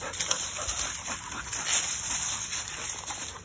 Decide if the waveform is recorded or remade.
recorded